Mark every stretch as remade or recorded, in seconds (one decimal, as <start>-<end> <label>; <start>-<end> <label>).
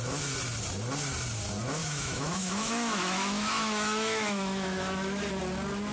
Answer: 0.0-1.8 recorded; 1.8-5.3 remade; 5.3-5.9 recorded